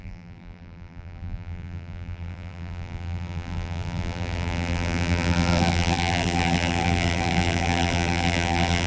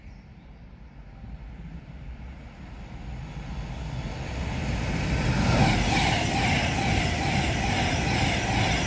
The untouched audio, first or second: second